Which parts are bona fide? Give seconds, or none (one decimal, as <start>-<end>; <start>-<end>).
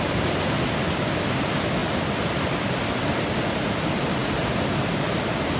0.0-5.6